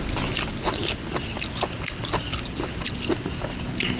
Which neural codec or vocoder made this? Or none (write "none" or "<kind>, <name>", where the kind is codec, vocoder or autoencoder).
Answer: none